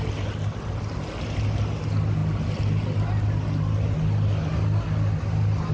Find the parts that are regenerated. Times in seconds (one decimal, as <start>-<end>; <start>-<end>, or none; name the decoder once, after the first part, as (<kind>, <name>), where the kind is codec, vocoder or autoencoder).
none